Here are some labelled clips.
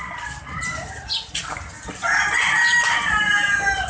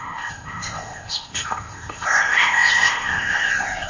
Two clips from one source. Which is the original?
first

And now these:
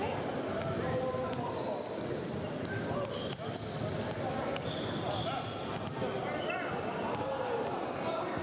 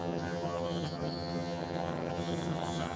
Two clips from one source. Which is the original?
first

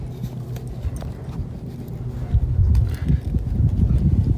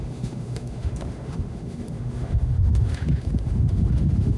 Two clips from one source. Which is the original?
first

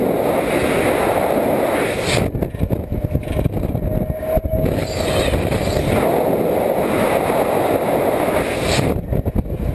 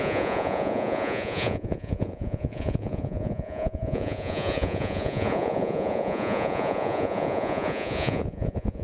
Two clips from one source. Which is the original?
first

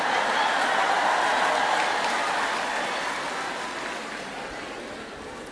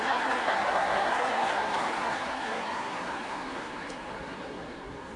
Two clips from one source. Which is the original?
first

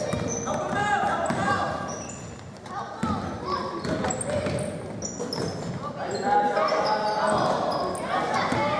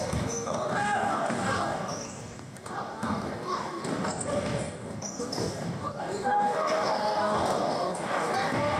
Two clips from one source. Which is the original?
first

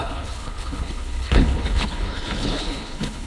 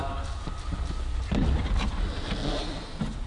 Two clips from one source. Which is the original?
second